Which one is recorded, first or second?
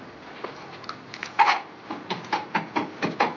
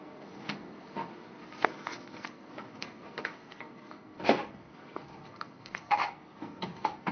first